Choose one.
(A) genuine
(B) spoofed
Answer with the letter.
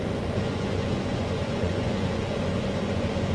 B